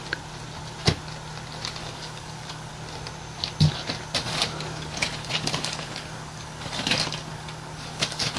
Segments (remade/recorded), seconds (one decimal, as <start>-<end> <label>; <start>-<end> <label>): 0.0-1.8 recorded; 1.8-2.7 remade; 2.7-4.2 recorded; 4.2-8.4 remade